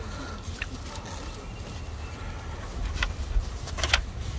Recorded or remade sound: recorded